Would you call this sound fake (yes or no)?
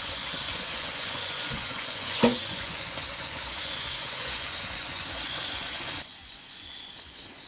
yes